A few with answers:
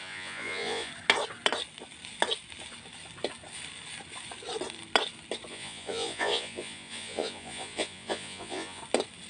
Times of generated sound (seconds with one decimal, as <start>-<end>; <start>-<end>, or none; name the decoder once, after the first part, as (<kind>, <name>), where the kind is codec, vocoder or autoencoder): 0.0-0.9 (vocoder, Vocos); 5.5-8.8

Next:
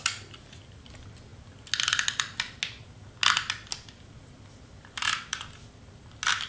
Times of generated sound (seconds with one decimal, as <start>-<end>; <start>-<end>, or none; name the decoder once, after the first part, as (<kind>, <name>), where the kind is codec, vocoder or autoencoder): none

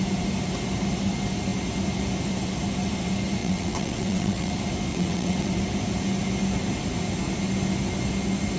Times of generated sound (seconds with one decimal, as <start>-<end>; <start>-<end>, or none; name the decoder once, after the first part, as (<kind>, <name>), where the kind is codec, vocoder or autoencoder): 3.4-4.5 (vocoder, WaveNeXt); 4.9-5.5

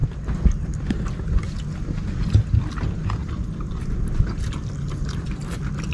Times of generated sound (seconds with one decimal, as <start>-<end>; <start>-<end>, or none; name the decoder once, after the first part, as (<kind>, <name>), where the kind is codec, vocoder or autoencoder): none

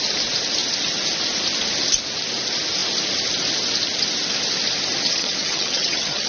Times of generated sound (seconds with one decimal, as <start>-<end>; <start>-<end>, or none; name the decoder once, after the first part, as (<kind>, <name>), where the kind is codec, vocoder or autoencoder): 5.2-6.3 (vocoder, HiFi-GAN)

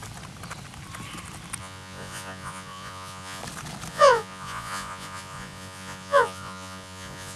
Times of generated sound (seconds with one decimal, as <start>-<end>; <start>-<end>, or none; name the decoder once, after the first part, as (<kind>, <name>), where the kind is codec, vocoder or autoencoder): 1.6-3.4 (vocoder, Vocos); 3.9-7.4

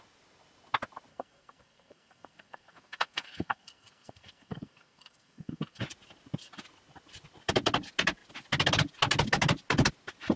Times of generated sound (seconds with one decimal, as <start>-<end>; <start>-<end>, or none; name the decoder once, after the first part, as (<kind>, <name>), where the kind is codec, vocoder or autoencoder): 1.1-5.8 (codec, SNAC)

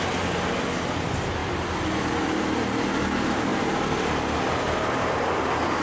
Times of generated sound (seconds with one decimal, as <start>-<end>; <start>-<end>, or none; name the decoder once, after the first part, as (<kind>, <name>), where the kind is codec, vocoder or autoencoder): none